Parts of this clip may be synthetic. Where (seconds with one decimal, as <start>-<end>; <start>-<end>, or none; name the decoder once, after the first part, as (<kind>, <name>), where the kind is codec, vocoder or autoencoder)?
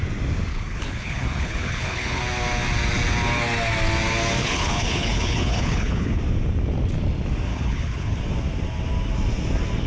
0.5-2.2 (codec, HILCodec); 4.4-6.2; 7.5-8.2